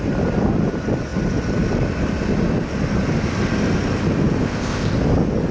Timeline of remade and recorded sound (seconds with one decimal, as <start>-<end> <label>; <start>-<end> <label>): 0.0-4.4 recorded; 4.4-4.9 remade; 4.9-5.5 recorded